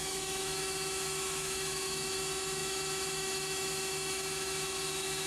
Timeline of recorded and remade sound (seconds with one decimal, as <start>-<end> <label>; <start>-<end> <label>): 0.0-5.3 remade